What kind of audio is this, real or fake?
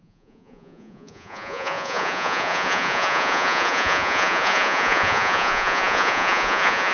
fake